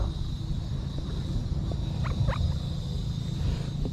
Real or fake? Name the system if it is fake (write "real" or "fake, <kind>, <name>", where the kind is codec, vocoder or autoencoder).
real